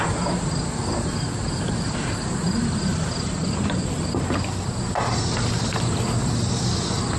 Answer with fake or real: real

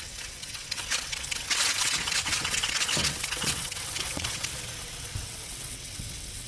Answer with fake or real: fake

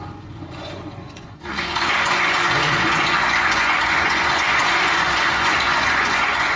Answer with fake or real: fake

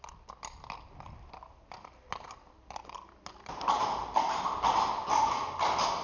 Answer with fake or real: real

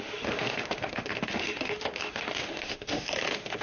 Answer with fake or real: fake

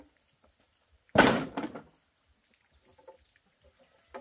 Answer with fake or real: real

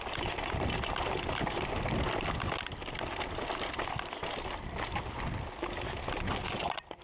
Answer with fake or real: real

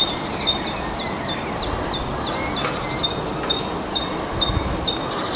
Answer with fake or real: real